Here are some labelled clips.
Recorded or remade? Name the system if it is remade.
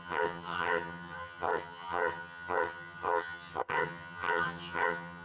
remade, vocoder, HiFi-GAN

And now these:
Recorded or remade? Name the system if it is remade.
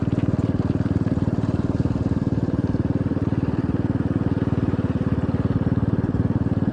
recorded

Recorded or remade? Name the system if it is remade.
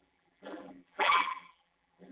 remade, vocoder, BigVGAN v2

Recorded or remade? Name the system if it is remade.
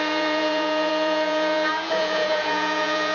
remade, vocoder, Vocos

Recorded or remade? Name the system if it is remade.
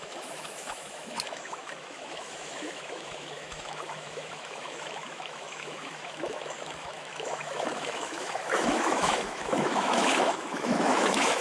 remade, autoencoder, DAC-VAE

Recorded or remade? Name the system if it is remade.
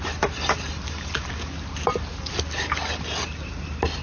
recorded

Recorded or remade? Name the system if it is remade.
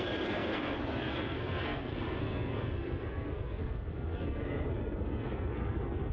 remade, codec, SNAC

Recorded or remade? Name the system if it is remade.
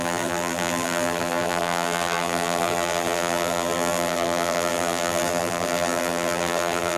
remade, vocoder, BigVGAN v2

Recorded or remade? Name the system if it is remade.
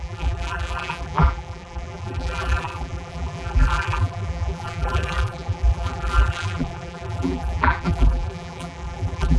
remade, vocoder, BigVGAN v2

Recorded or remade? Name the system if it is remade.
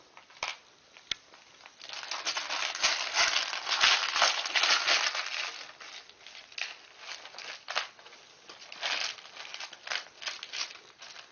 recorded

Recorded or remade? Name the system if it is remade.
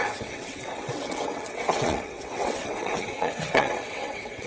remade, vocoder, WaveNeXt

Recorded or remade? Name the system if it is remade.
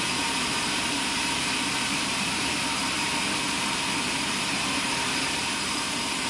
remade, vocoder, BigVGAN v2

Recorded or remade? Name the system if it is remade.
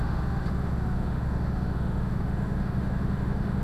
remade, autoencoder, DAC-VAE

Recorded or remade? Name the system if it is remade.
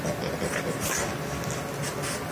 recorded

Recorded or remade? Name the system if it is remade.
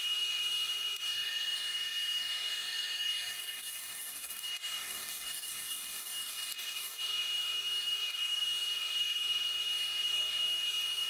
remade, codec, DAC